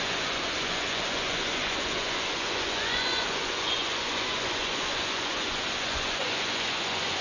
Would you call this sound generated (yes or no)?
yes